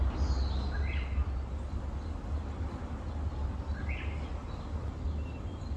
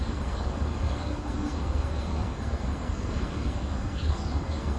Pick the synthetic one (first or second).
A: second